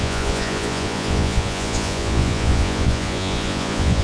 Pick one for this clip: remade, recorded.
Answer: remade